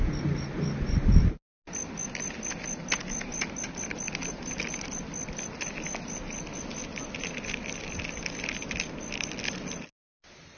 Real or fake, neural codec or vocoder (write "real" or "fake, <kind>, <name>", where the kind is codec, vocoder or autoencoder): real